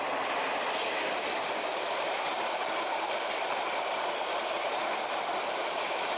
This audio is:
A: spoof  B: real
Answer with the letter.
B